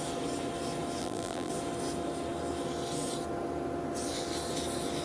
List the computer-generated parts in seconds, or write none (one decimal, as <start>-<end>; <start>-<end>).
1.0-1.5